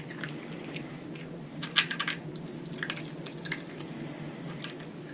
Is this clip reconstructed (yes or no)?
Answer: no